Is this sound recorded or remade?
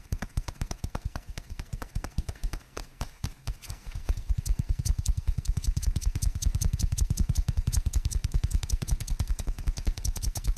remade